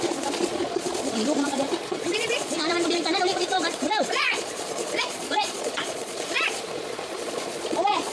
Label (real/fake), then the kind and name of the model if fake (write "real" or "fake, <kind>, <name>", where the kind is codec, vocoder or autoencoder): fake, vocoder, Vocos